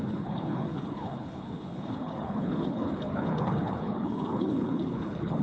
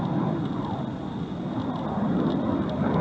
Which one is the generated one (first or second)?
first